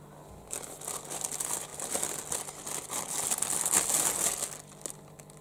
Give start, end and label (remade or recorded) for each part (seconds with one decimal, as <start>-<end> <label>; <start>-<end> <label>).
0.0-5.4 recorded